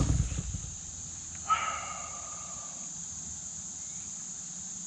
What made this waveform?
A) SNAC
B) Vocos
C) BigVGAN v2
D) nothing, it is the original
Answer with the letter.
D